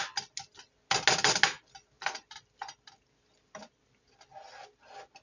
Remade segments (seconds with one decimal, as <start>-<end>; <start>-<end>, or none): none